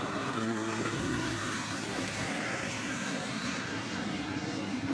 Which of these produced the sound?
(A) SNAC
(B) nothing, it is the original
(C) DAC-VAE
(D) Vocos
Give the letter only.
A